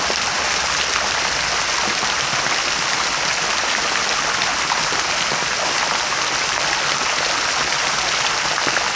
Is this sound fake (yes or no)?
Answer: no